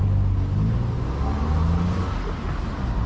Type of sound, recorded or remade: recorded